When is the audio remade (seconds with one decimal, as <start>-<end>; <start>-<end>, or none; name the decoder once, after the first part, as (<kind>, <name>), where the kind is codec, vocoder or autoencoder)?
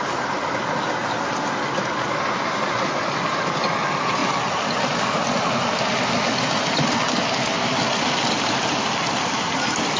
none